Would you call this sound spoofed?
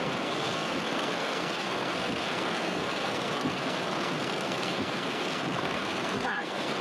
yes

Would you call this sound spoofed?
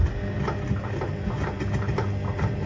no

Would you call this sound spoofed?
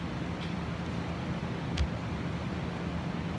no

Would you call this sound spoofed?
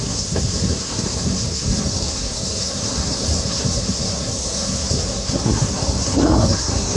yes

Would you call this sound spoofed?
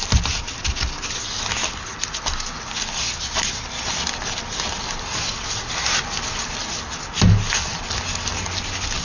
no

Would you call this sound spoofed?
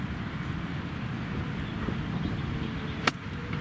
no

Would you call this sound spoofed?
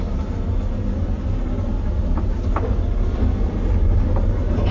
no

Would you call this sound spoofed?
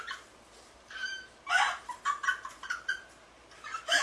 yes